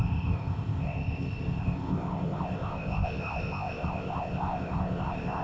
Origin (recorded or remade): remade